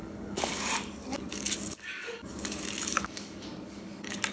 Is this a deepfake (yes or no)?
yes